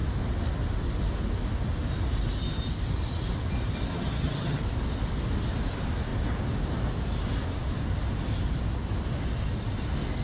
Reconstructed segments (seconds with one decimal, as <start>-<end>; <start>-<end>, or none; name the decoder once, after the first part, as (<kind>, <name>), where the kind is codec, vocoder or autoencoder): 3.9-4.6 (vocoder, HiFi-GAN)